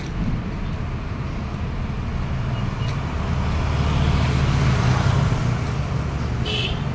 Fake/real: real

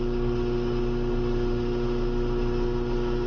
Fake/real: real